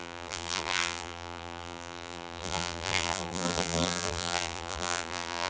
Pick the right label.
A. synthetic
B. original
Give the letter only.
A